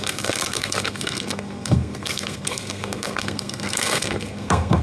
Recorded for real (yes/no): no